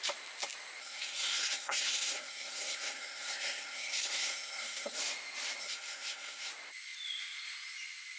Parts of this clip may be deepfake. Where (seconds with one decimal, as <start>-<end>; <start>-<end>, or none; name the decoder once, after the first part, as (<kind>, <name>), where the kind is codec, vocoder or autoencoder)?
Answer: 0.8-5.0 (codec, SNAC); 5.6-6.5